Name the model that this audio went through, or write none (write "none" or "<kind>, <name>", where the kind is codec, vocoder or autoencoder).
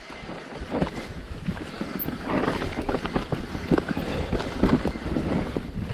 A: none